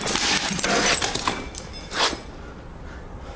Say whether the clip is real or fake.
real